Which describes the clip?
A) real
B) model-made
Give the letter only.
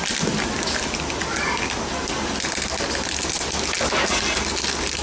A